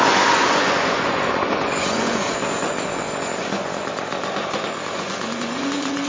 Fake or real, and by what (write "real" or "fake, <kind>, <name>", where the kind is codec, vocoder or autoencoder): fake, vocoder, Vocos